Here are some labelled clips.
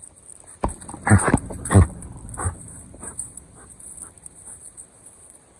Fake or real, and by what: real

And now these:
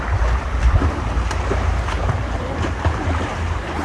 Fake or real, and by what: fake, vocoder, BigVGAN v2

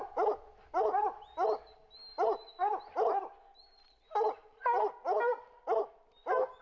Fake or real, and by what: real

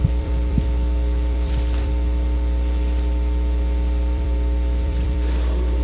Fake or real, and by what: fake, vocoder, BigVGAN v2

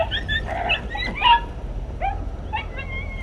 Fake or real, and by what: real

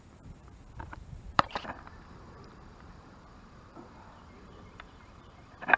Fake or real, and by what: fake, vocoder, BigVGAN v2